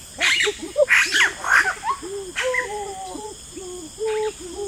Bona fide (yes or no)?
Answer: yes